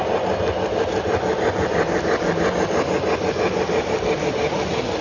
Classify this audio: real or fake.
real